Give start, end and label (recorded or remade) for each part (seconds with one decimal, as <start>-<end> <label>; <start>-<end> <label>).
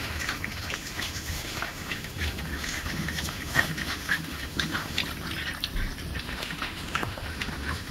0.0-5.0 remade; 5.0-6.2 recorded; 6.2-7.9 remade